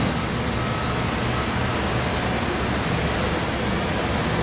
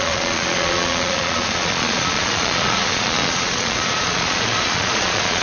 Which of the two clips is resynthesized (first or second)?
second